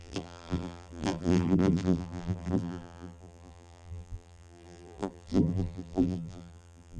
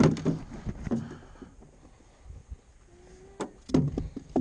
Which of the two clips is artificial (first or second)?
first